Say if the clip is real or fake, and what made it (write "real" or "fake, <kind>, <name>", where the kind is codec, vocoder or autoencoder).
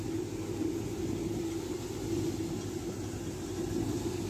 real